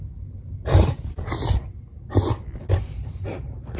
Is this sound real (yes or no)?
yes